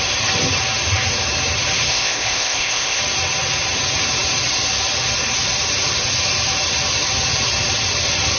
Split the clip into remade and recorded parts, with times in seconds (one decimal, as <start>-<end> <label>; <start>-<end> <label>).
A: 0.0-1.9 recorded; 1.9-3.0 remade; 3.0-8.4 recorded